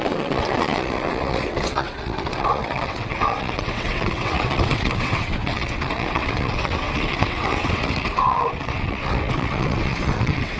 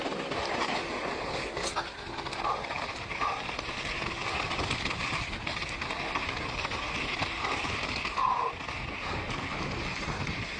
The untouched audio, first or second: second